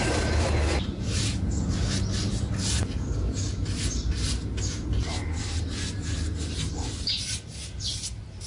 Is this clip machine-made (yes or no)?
no